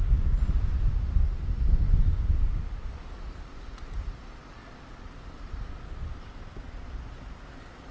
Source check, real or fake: real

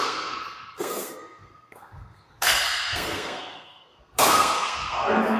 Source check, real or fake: fake